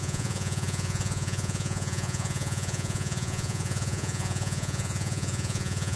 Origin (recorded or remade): remade